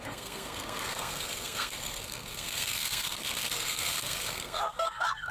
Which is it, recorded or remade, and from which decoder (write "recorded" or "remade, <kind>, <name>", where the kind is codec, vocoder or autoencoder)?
remade, codec, SNAC